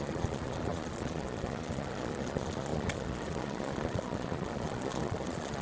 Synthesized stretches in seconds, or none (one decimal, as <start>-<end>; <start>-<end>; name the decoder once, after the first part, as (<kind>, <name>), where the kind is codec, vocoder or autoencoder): 0.0-5.6 (vocoder, Vocos)